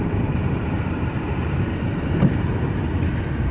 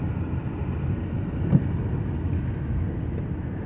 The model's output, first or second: first